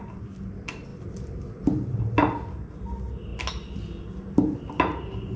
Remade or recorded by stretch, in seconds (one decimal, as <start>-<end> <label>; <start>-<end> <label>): 0.0-5.4 recorded